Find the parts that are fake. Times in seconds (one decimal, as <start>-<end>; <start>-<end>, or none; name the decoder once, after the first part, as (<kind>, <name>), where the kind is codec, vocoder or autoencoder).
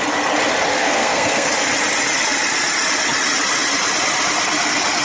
0.7-1.5 (codec, SNAC)